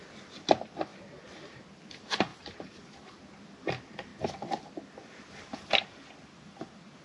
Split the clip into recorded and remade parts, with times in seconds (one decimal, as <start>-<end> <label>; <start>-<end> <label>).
0.0-2.3 recorded; 2.3-3.1 remade; 3.1-7.0 recorded